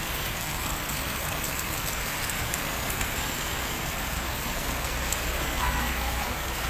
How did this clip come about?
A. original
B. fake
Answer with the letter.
B